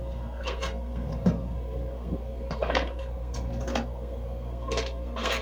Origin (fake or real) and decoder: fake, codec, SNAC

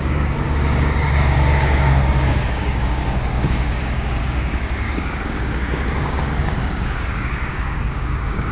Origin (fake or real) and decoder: fake, codec, DAC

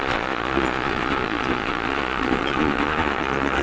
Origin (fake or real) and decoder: fake, vocoder, Vocos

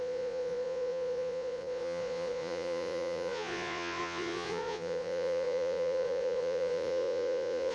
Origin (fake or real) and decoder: fake, vocoder, Vocos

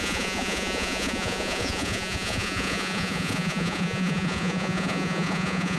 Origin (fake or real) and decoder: fake, vocoder, Vocos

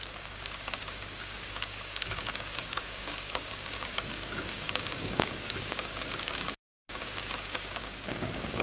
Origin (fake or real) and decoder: fake, codec, DAC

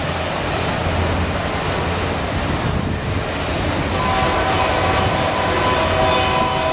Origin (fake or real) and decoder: real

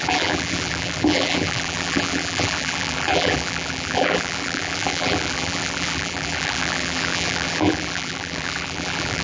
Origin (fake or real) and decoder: fake, vocoder, BigVGAN v2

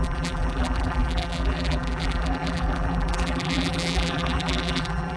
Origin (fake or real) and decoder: fake, vocoder, BigVGAN v2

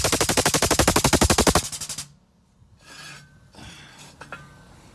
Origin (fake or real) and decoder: real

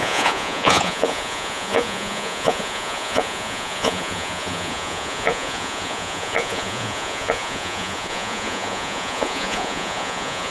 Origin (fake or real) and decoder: fake, vocoder, Vocos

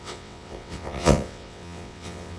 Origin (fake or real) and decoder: fake, vocoder, WaveNeXt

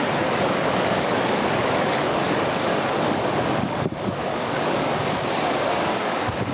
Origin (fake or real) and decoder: fake, codec, DAC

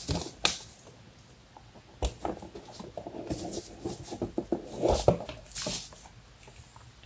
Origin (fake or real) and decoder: real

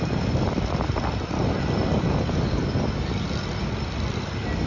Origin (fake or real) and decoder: real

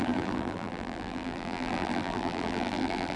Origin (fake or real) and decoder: fake, vocoder, BigVGAN v2